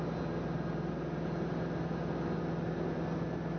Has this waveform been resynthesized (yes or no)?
no